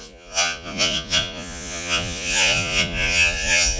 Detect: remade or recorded remade